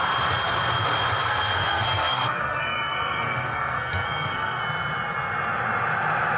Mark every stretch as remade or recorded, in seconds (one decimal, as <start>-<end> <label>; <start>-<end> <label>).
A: 0.0-1.2 recorded; 1.2-4.6 remade; 4.6-6.4 recorded